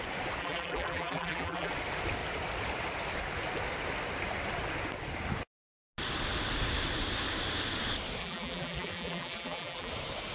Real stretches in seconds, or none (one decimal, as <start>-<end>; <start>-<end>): 0.0-0.4; 1.7-8.2; 9.9-10.3